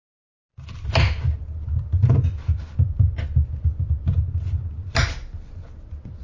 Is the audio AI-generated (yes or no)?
no